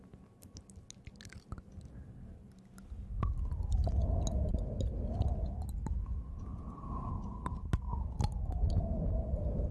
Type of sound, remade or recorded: recorded